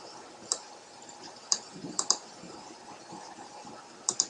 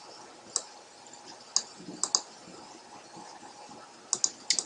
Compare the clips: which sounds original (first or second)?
second